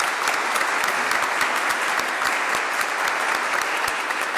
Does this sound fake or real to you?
real